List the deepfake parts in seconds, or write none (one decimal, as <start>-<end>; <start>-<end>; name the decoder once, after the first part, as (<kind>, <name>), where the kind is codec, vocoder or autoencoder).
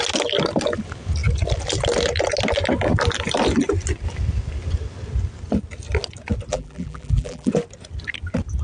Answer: 6.5-7.5 (vocoder, BigVGAN v2)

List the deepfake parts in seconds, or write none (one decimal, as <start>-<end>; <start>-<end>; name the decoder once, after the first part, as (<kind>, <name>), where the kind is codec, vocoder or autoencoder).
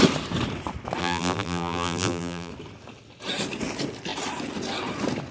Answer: 1.0-2.5 (vocoder, BigVGAN v2)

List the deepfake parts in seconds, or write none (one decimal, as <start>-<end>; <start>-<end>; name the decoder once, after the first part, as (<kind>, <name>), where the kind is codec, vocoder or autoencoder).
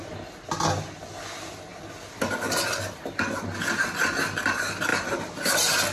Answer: 4.9-5.5 (vocoder, BigVGAN v2)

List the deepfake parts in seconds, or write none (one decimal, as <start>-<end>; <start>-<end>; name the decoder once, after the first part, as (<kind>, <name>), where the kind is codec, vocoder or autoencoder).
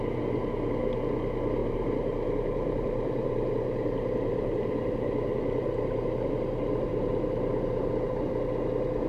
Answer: 1.6-6.3 (vocoder, BigVGAN v2); 6.9-8.3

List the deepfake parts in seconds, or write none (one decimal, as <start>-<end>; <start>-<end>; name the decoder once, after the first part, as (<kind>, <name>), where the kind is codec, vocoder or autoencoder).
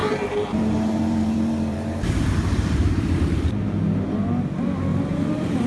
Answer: 0.0-3.4 (vocoder, BigVGAN v2); 4.9-5.7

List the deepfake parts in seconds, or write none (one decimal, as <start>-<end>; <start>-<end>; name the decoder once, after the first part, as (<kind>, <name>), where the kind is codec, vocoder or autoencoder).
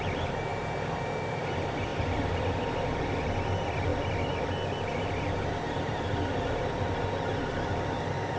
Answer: 0.0-3.9 (vocoder, BigVGAN v2); 5.8-8.4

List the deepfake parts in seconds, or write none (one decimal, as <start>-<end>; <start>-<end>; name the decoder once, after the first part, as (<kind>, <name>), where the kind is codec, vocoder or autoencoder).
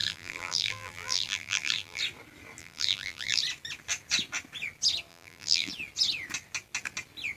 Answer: 0.0-2.0 (vocoder, BigVGAN v2); 2.6-3.4; 5.1-5.7